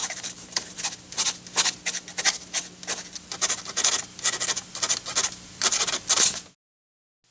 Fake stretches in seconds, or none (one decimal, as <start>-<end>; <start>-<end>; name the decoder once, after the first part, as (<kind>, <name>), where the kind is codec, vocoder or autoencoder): 0.0-0.8 (vocoder, BigVGAN v2)